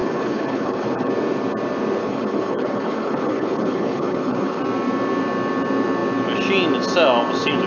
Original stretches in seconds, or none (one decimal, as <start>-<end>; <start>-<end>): 1.1-2.0; 4.6-7.7